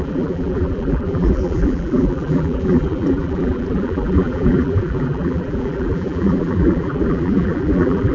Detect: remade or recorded remade